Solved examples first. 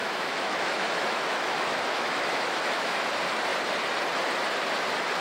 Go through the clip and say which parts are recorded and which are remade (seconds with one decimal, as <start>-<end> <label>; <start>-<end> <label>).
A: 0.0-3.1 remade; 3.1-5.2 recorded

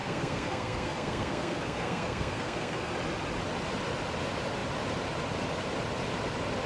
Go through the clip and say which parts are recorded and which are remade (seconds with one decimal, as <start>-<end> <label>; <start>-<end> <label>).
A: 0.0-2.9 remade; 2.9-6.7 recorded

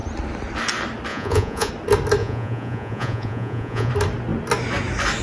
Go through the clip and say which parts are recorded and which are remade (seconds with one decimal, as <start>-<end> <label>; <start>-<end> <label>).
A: 0.0-1.1 recorded; 1.1-1.7 remade; 1.7-2.2 recorded; 2.2-3.9 remade; 3.9-5.2 recorded